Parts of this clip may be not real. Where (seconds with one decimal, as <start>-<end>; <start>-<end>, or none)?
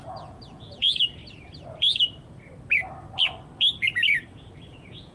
0.0-1.2; 4.3-5.1